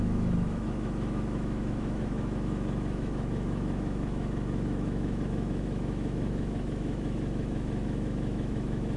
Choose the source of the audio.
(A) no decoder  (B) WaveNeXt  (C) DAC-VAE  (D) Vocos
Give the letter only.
C